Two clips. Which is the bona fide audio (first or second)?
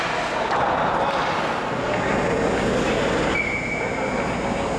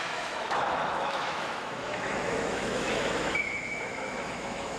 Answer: first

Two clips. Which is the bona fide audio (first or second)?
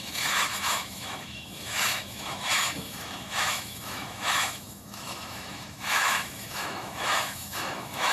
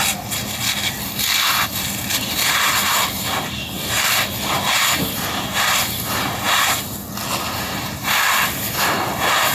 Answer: second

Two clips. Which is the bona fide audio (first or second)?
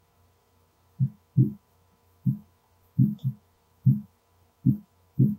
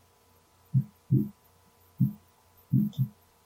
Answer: second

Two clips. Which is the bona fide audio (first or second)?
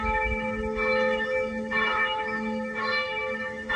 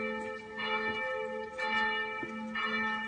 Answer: second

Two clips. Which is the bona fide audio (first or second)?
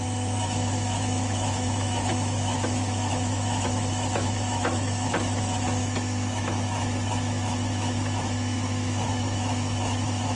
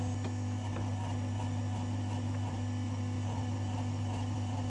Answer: second